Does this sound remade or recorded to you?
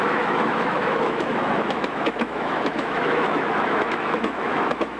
remade